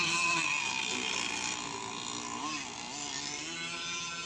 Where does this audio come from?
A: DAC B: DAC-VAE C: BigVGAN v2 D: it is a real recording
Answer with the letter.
D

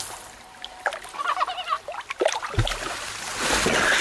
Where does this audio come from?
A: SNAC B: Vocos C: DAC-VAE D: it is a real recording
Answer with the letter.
D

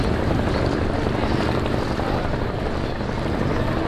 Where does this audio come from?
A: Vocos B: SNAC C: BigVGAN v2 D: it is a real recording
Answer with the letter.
D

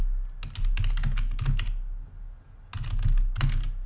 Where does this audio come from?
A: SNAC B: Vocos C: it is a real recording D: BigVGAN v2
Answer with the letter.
C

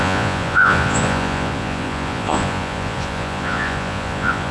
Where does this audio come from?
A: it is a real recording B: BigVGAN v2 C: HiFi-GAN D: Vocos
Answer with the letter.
D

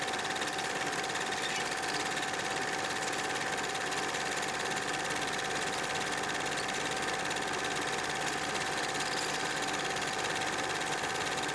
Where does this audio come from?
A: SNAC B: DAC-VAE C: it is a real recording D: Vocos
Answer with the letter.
C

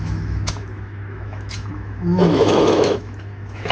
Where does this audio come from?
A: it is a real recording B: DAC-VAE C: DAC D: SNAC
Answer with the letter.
B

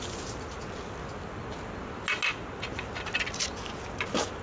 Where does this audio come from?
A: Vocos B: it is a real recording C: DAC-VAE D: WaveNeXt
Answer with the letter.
B